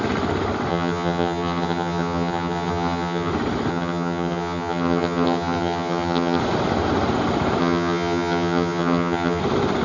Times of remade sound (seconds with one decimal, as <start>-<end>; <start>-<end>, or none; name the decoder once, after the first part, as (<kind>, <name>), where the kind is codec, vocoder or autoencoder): 0.7-3.3 (vocoder, HiFi-GAN); 3.7-6.4; 7.6-9.4